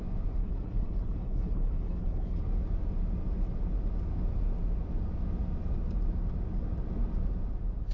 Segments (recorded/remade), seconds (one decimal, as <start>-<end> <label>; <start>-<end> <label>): 0.0-0.4 recorded; 0.4-2.4 remade; 2.4-7.9 recorded